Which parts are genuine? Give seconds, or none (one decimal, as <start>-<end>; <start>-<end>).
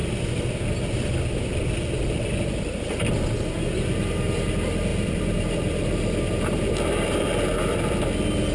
0.0-4.9; 8.0-8.5